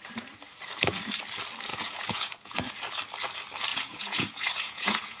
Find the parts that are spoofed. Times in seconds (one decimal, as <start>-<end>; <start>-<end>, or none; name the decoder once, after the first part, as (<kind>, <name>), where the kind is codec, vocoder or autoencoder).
1.7-2.7 (vocoder, Vocos); 3.7-5.2